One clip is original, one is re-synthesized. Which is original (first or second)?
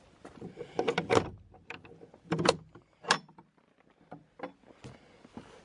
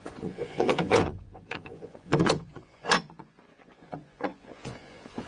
first